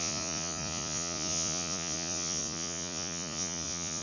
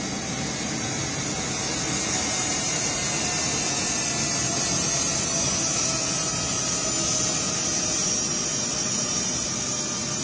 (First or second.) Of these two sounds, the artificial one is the first